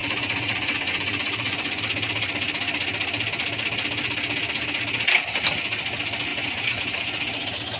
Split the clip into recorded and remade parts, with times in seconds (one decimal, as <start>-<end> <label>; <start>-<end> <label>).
0.0-1.8 remade; 1.8-6.3 recorded; 6.3-6.8 remade; 6.8-7.8 recorded